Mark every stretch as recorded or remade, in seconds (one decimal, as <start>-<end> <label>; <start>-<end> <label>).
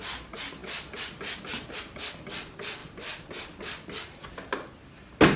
0.0-0.6 recorded; 0.6-1.4 remade; 1.4-5.4 recorded